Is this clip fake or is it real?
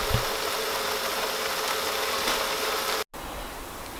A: real